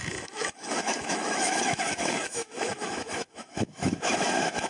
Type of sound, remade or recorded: remade